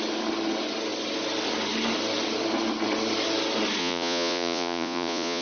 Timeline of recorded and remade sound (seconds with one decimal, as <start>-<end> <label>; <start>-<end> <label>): 0.0-3.8 recorded; 3.8-5.4 remade